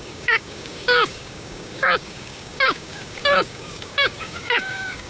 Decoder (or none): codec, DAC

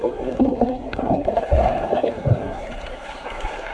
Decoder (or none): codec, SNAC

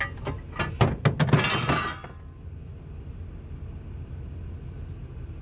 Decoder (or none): none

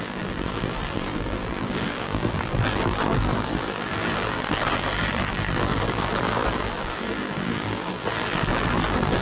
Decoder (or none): vocoder, BigVGAN v2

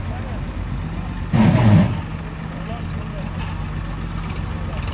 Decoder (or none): none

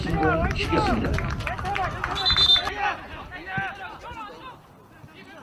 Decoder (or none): none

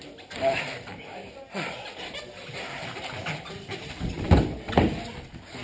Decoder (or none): none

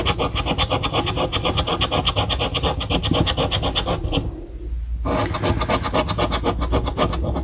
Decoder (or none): none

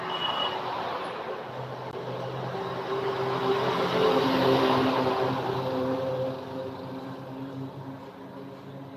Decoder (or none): none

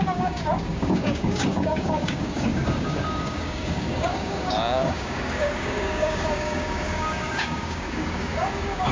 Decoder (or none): codec, DAC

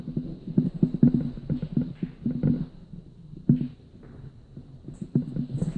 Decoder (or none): none